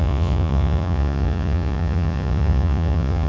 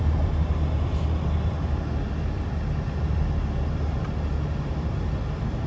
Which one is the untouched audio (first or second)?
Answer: second